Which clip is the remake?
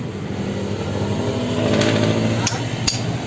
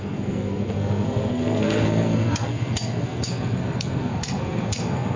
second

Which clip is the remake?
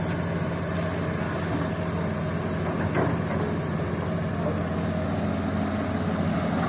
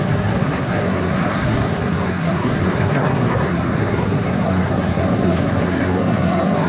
second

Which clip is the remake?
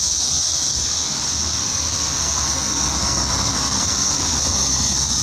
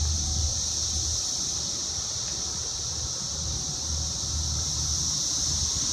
first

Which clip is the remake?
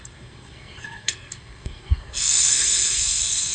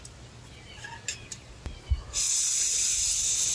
first